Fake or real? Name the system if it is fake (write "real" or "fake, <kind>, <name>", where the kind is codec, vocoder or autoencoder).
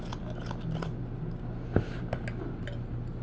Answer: real